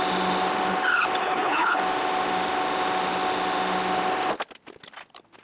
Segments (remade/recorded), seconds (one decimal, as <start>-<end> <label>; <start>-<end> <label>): 0.0-1.2 recorded; 1.2-1.8 remade; 1.8-5.4 recorded